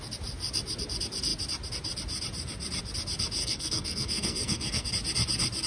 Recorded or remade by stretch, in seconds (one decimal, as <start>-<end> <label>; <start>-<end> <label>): 0.0-3.4 recorded; 3.4-4.9 remade; 4.9-5.7 recorded